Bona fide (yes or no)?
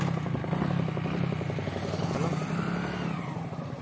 yes